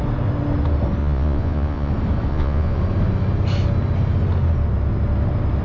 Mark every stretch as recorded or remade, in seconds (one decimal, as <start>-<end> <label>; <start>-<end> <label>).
0.0-1.0 recorded; 1.0-1.9 remade; 1.9-2.3 recorded; 2.3-2.8 remade; 2.8-5.6 recorded